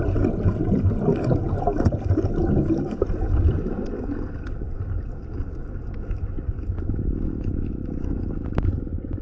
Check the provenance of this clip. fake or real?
real